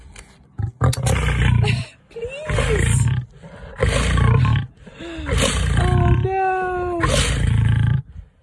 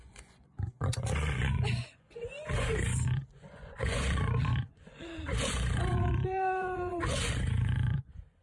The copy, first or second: second